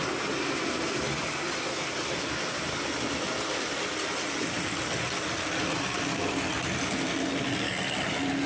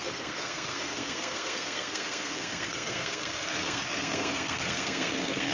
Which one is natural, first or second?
first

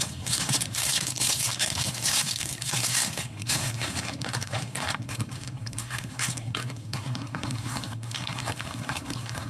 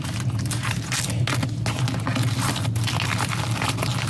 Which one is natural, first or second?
second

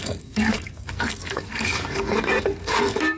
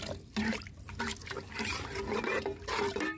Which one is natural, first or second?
second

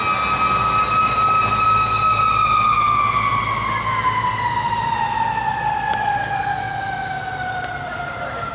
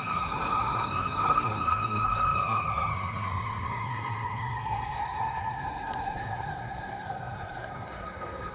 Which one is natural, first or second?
first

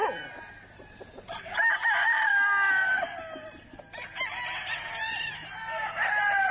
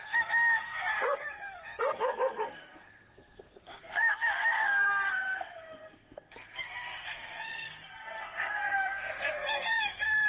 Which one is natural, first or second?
first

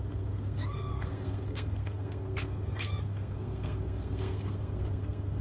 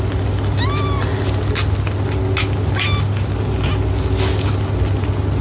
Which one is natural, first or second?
second